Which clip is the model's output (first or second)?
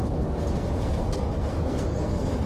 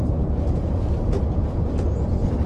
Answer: first